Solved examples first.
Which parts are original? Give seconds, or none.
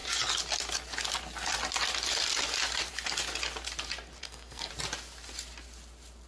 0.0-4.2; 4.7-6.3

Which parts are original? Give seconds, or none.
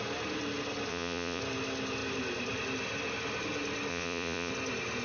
0.0-0.9; 1.4-3.9; 4.5-5.0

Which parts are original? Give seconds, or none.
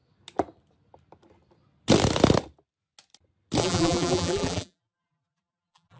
0.0-3.6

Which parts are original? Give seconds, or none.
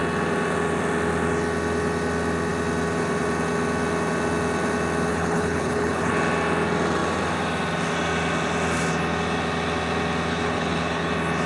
0.0-5.1; 6.1-10.3; 11.1-11.5